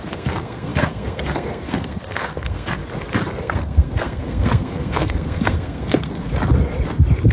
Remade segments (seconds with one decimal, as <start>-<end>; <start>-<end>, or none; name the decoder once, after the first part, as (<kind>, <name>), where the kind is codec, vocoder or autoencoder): 0.0-2.8 (codec, SNAC); 3.4-6.3